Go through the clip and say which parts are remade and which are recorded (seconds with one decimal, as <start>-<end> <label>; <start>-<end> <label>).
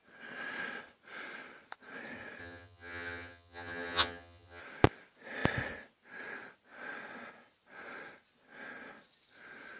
0.0-2.4 recorded; 2.4-4.6 remade; 4.6-9.8 recorded